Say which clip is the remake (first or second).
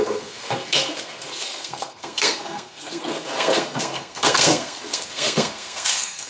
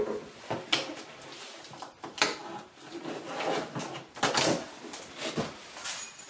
first